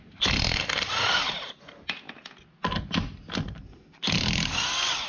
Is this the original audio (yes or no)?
yes